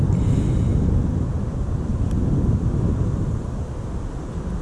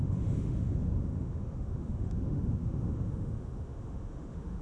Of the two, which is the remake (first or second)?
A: second